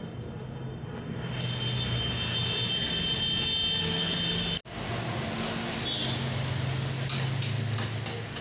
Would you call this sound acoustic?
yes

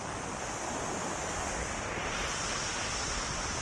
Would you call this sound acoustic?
yes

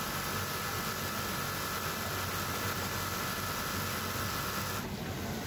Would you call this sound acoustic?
yes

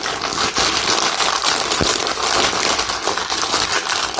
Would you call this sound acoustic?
yes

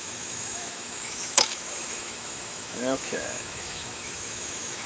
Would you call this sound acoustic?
no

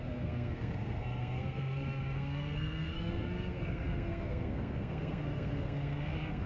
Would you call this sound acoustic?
no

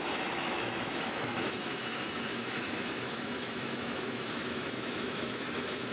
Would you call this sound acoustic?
no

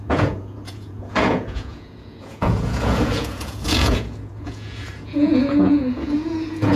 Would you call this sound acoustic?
no